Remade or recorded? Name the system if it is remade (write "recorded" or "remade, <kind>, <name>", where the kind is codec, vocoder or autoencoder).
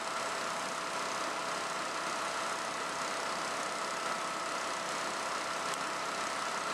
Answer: recorded